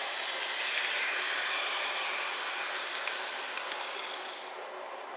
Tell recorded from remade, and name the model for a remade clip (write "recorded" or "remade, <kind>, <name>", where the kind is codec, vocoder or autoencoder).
recorded